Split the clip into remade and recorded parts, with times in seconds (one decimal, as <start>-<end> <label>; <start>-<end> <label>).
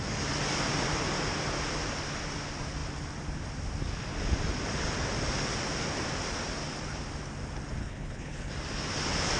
0.0-7.8 recorded; 7.8-8.5 remade; 8.5-9.4 recorded